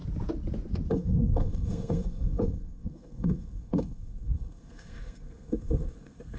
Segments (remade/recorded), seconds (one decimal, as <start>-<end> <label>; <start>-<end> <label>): 0.0-0.9 recorded; 0.9-6.4 remade